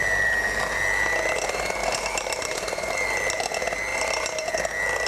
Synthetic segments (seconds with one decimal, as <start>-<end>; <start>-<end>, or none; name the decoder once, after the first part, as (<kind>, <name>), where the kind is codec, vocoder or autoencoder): 1.8-2.9 (vocoder, BigVGAN v2); 3.9-4.5